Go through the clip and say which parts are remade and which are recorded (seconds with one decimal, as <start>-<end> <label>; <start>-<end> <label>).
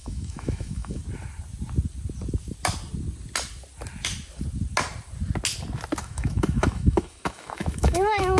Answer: 0.0-1.0 remade; 1.0-6.0 recorded; 6.0-8.4 remade